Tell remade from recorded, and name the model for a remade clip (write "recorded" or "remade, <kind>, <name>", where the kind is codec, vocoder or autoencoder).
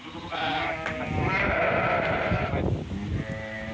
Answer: remade, vocoder, BigVGAN v2